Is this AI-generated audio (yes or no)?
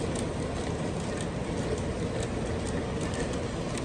no